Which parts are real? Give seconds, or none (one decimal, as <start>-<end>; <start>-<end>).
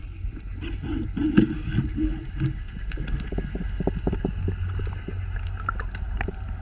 0.0-6.6